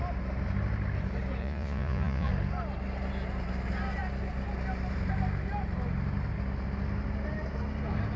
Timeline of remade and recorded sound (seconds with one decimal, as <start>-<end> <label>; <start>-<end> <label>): 0.0-1.4 recorded; 1.4-2.3 remade; 2.3-8.2 recorded